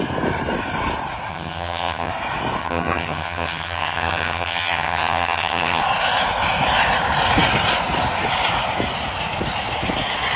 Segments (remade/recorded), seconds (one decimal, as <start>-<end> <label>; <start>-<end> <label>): 0.0-1.3 recorded; 1.3-2.1 remade; 2.1-2.6 recorded; 2.6-5.8 remade; 5.8-10.4 recorded